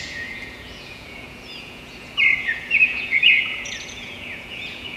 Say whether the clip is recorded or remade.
remade